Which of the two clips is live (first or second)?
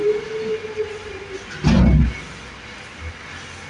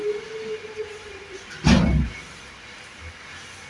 first